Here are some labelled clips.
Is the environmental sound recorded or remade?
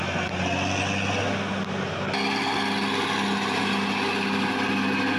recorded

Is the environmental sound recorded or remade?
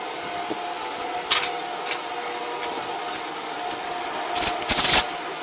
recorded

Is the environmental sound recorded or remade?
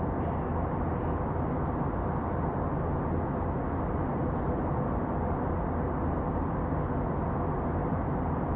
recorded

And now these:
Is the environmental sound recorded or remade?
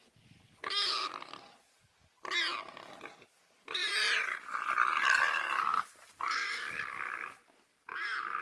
recorded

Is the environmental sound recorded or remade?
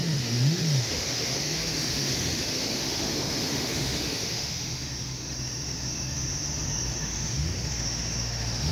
remade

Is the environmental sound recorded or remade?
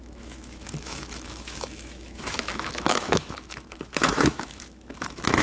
remade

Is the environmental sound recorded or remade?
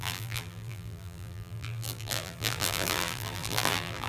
remade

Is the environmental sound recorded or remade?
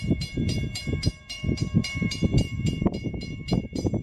remade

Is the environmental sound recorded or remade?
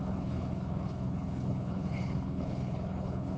remade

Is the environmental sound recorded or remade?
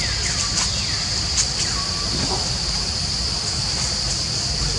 recorded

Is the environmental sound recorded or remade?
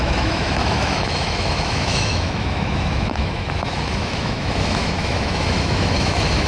remade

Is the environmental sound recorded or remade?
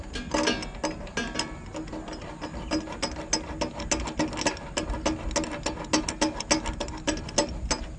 recorded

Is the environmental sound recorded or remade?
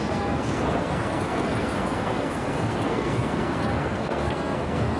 remade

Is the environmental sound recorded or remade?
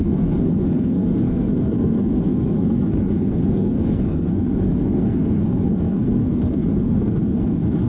remade